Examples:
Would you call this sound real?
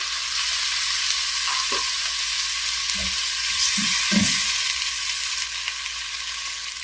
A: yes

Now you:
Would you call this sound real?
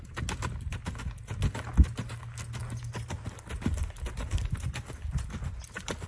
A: yes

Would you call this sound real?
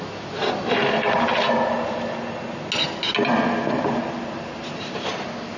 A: yes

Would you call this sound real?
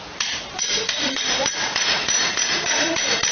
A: no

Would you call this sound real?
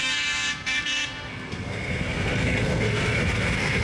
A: no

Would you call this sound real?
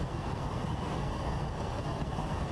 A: no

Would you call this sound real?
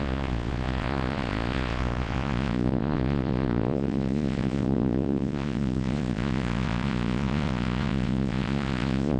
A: no